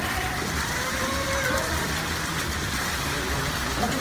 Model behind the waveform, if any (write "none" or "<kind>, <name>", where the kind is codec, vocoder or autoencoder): vocoder, BigVGAN v2